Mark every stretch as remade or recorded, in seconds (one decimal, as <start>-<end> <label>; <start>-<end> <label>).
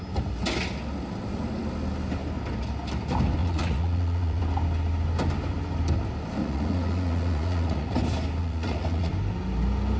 0.0-3.4 recorded; 3.4-4.4 remade; 4.4-6.4 recorded; 6.4-7.9 remade; 7.9-8.4 recorded; 8.4-9.1 remade; 9.1-10.0 recorded